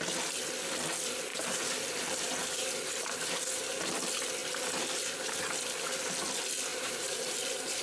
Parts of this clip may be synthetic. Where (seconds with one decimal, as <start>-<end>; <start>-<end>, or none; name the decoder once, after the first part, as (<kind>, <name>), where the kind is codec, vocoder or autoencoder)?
1.3-3.7 (vocoder, BigVGAN v2); 6.7-7.8